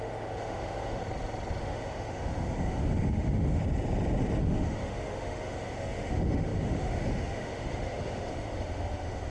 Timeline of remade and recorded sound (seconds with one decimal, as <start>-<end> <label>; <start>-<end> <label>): 0.0-1.0 remade; 1.0-1.6 recorded; 1.6-3.6 remade; 3.6-4.4 recorded; 4.4-9.3 remade